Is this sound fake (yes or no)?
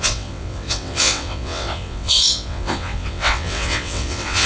yes